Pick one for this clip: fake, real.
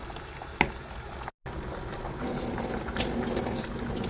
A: real